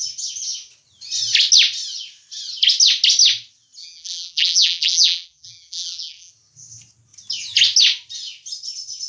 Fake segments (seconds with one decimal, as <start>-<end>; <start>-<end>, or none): 3.8-6.3